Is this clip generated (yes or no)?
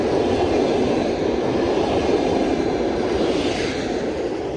no